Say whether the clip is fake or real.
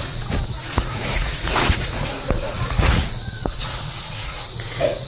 fake